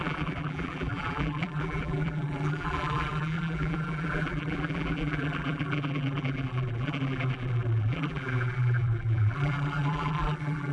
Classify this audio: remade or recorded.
remade